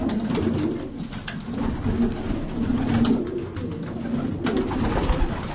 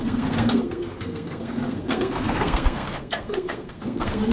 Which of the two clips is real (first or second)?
first